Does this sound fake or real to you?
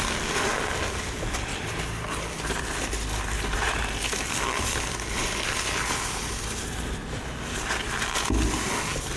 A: real